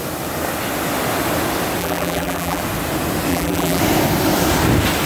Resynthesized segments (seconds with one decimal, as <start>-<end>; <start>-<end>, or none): 1.8-2.6; 3.3-3.8